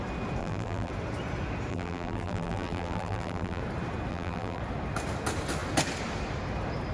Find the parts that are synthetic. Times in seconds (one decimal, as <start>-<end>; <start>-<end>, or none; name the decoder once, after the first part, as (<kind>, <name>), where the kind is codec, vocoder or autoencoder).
0.4-0.9 (vocoder, BigVGAN v2); 1.7-3.6; 4.1-4.6